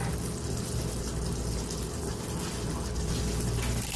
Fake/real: real